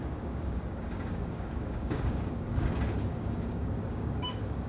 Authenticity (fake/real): fake